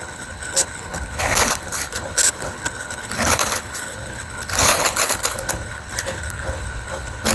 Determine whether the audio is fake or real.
fake